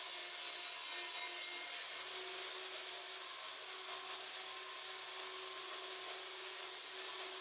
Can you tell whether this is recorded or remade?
recorded